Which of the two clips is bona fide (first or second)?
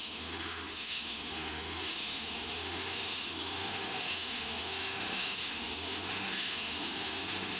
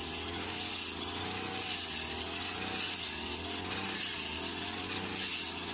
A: second